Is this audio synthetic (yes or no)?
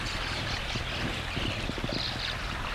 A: no